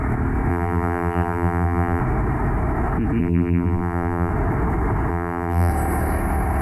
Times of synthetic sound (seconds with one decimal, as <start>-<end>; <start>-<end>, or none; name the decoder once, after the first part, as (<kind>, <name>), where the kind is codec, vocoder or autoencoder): 0.5-2.0 (vocoder, BigVGAN v2); 3.2-4.3; 5.1-5.7